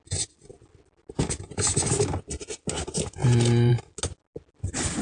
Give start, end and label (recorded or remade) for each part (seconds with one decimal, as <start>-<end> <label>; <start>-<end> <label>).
0.0-5.0 recorded